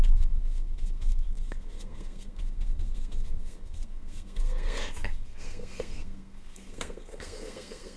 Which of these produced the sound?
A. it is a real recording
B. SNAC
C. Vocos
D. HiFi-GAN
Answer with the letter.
B